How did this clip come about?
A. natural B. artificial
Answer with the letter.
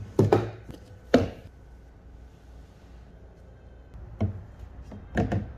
A